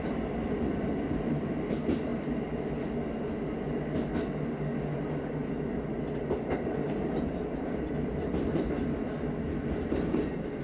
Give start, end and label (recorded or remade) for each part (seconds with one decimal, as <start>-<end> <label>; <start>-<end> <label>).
0.0-10.6 recorded